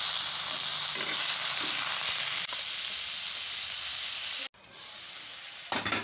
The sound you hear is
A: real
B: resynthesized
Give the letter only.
A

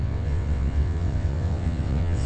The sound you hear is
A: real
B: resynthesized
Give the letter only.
B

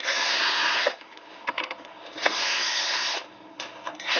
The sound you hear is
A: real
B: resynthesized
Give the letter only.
B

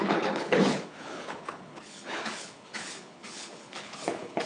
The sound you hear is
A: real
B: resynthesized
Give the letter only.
B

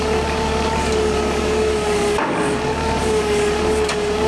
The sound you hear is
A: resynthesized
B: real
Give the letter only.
A